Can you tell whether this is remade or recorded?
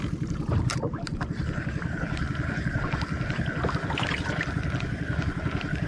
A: recorded